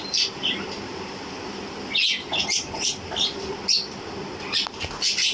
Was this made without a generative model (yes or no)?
yes